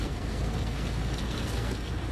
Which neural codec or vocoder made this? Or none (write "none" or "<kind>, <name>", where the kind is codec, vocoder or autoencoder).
codec, SNAC